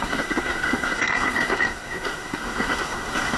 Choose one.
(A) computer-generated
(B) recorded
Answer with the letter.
A